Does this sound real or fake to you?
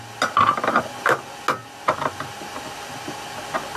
real